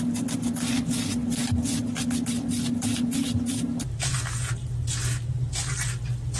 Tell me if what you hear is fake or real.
real